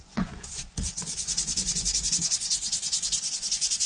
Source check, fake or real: fake